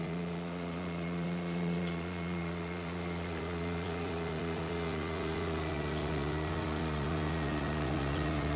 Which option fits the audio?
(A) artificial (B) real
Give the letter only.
A